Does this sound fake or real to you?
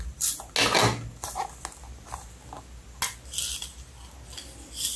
real